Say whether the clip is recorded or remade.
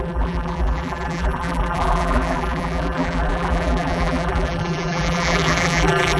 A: remade